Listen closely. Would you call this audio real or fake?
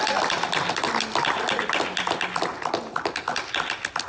real